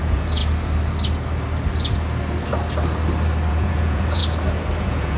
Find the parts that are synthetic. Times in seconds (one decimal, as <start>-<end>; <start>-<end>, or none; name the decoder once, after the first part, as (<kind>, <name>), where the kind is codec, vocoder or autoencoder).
0.0-0.4 (vocoder, Vocos); 3.5-4.2; 4.8-5.2